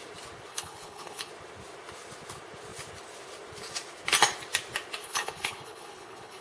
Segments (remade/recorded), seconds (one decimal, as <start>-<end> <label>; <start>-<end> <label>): 0.0-0.5 recorded; 0.5-1.3 remade; 1.3-5.0 recorded; 5.0-6.4 remade

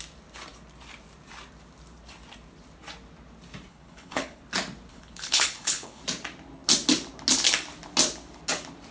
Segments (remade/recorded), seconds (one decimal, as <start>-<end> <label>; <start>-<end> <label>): 0.0-3.7 recorded; 3.7-4.4 remade; 4.4-4.9 recorded; 4.9-6.0 remade; 6.0-8.9 recorded